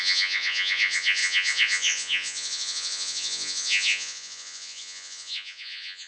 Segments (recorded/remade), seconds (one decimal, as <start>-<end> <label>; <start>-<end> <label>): 0.0-6.1 remade